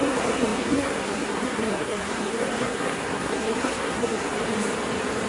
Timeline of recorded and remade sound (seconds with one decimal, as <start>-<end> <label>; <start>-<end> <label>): 0.0-4.4 remade; 4.4-5.3 recorded